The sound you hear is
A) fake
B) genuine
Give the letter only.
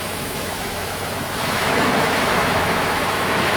A